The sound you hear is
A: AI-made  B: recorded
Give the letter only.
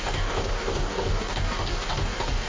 A